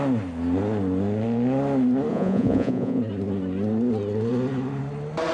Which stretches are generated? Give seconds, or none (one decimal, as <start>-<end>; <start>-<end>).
2.1-3.0